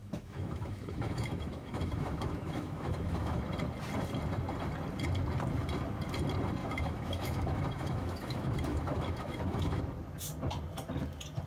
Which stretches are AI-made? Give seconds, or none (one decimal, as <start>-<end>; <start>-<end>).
0.0-3.4; 6.6-9.8